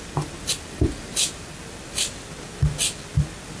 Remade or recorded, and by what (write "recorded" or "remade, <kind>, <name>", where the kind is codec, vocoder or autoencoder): recorded